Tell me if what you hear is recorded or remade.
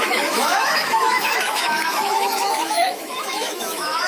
remade